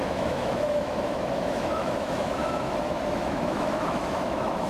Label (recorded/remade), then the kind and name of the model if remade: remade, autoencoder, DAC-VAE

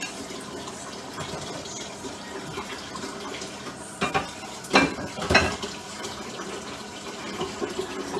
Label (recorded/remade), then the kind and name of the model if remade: recorded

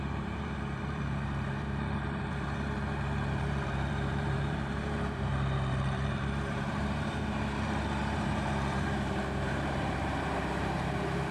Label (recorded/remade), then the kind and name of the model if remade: remade, vocoder, BigVGAN v2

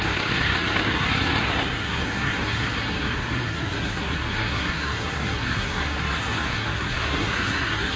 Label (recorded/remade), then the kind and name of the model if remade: remade, codec, SNAC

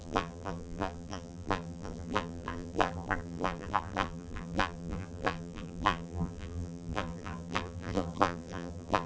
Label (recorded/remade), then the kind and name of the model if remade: remade, vocoder, BigVGAN v2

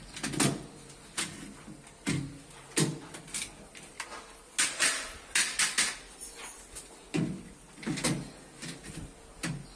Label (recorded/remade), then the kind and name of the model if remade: recorded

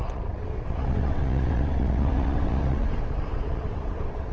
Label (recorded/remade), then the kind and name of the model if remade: remade, vocoder, WaveNeXt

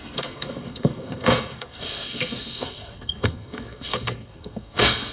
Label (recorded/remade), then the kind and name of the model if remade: remade, codec, SNAC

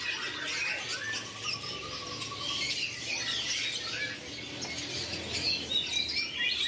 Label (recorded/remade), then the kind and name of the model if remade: recorded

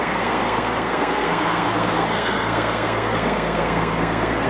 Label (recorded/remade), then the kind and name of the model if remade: remade, codec, SNAC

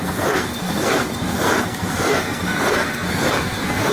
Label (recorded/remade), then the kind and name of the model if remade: remade, codec, SNAC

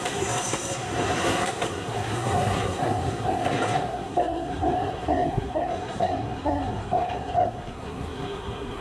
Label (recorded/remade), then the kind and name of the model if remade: remade, codec, SNAC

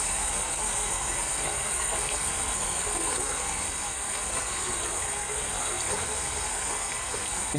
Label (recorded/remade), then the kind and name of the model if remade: remade, codec, SNAC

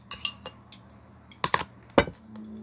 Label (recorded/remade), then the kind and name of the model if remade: recorded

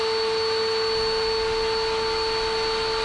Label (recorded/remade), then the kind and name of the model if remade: recorded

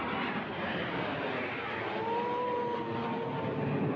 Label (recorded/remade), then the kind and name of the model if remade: recorded